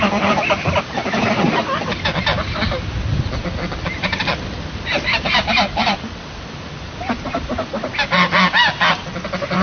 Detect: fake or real real